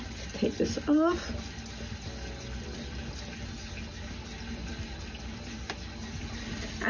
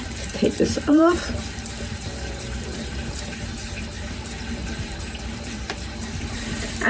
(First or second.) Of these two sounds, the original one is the first